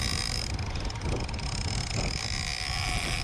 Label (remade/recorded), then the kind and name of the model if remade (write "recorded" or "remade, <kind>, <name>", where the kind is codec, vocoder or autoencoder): recorded